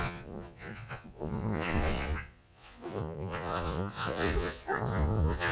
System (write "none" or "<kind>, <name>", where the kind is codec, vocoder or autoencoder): vocoder, Vocos